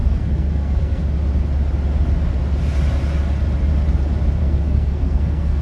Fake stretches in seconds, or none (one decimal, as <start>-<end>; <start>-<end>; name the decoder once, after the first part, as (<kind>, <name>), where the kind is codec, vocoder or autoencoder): 0.0-1.0 (codec, SNAC); 4.4-5.6